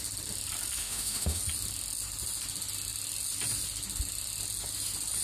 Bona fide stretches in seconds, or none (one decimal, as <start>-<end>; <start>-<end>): 0.0-0.8; 1.4-5.2